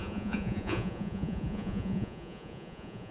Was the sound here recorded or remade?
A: remade